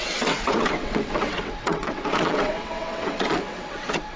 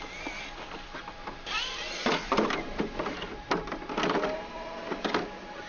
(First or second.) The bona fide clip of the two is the second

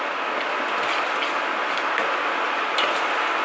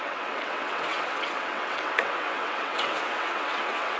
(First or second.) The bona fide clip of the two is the first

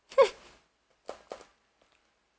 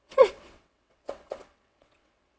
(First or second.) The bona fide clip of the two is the first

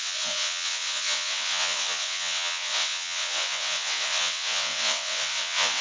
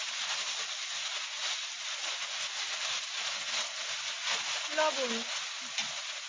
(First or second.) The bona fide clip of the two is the second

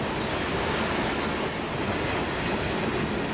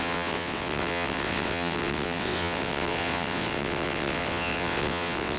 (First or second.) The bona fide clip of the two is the first